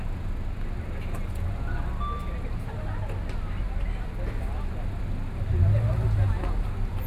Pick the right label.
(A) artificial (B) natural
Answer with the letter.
B